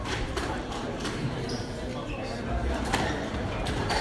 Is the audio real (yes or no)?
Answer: no